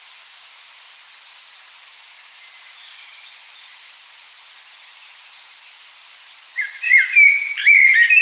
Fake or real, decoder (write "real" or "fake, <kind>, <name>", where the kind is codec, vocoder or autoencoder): fake, vocoder, BigVGAN v2